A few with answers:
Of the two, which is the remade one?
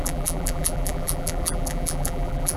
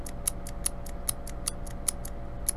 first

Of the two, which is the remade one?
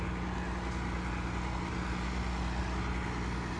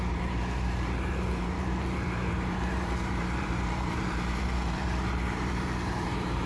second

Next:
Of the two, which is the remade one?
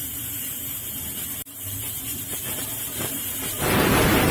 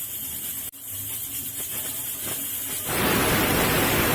first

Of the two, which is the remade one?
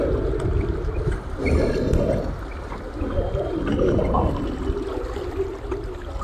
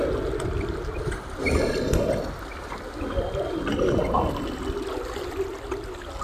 first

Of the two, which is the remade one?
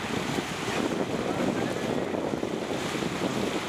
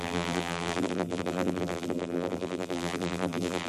second